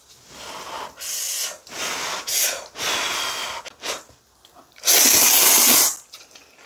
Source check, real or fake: real